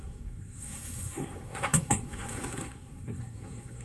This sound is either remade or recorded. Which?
remade